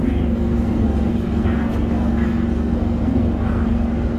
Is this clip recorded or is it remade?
remade